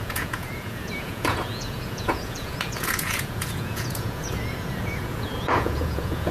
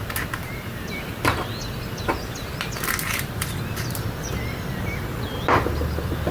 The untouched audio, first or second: second